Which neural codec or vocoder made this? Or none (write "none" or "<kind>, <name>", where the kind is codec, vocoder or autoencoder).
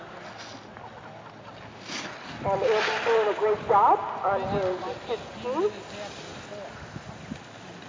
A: none